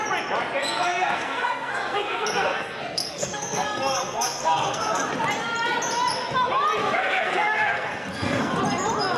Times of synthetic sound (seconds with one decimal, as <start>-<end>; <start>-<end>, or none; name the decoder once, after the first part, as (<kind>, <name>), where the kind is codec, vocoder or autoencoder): 0.6-5.1 (codec, SNAC); 6.8-8.6